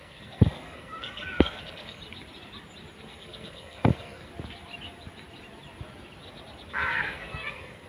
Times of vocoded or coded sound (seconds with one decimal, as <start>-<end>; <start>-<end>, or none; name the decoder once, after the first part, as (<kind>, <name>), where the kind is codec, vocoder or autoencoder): 0.0-2.0 (codec, SNAC); 3.1-4.3; 6.7-7.9